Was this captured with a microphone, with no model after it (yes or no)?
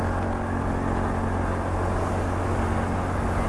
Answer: yes